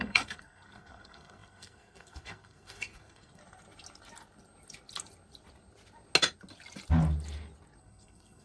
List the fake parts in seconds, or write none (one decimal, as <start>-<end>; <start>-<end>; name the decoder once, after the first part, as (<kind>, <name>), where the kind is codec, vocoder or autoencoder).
0.0-3.4 (codec, SNAC); 7.8-8.4